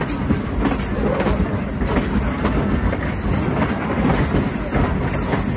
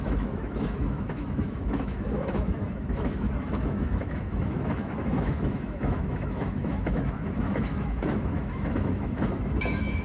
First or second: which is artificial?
second